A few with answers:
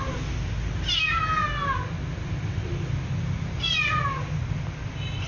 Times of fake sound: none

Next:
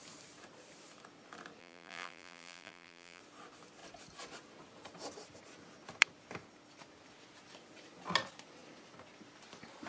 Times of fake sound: 1.6-3.2 (vocoder, BigVGAN v2)

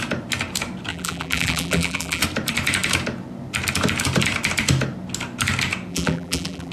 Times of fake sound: 0.9-2.2 (vocoder, BigVGAN v2); 5.9-6.7

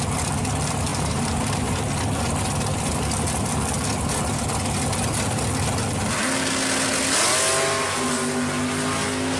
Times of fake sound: 0.9-1.7 (vocoder, BigVGAN v2)

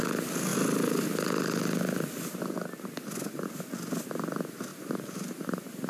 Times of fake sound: 4.7-5.9 (vocoder, BigVGAN v2)